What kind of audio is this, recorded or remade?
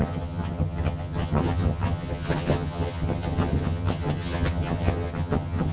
remade